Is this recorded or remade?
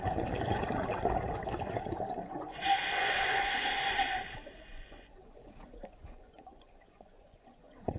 remade